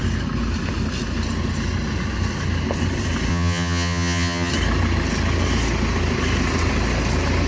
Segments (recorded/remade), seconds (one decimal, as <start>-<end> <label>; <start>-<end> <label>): 0.0-3.3 recorded; 3.3-4.5 remade; 4.5-7.5 recorded